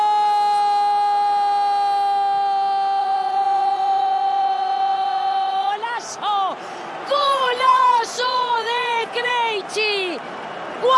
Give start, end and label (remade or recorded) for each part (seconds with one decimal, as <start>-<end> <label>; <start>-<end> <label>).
0.0-3.0 recorded; 3.0-5.7 remade; 5.7-7.0 recorded; 7.0-9.3 remade; 9.3-11.0 recorded